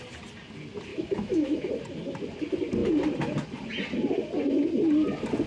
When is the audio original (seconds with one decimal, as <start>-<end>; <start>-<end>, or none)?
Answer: 0.0-0.9; 1.7-5.5